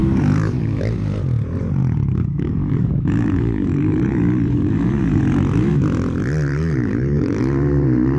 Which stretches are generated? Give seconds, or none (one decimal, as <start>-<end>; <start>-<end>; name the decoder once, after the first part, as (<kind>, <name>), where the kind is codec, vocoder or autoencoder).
0.0-0.8 (codec, DAC); 1.8-5.2; 6.5-7.4